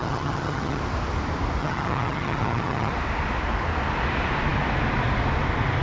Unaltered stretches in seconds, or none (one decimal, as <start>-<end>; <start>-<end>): 0.8-1.6; 2.9-5.8